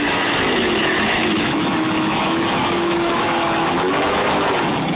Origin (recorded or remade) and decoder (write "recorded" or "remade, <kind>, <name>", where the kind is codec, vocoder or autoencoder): remade, autoencoder, DAC-VAE